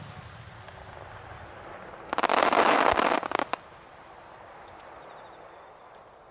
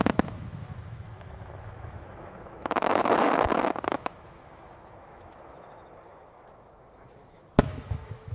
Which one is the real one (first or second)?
first